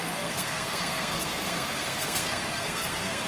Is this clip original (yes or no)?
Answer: no